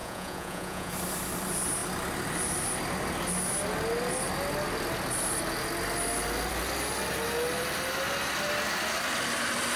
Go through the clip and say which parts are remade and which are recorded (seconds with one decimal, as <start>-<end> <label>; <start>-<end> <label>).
0.0-0.9 remade; 0.9-9.8 recorded